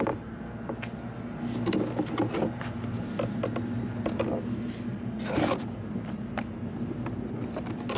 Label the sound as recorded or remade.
recorded